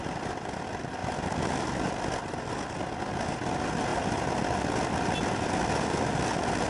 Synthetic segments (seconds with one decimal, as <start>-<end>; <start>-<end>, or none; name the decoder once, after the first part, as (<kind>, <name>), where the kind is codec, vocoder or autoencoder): 1.0-1.9 (vocoder, BigVGAN v2)

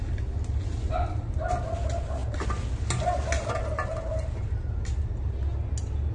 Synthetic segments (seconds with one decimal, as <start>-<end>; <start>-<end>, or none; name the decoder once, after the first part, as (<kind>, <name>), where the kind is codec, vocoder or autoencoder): none

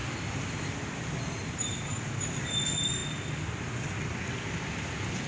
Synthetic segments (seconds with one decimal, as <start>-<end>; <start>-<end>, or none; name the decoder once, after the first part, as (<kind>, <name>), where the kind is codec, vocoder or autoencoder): none

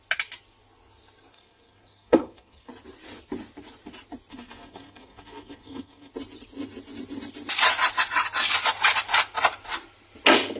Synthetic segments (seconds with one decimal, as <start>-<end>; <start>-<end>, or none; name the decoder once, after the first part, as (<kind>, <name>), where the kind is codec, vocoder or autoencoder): 1.3-2.7 (codec, SNAC); 4.3-6.1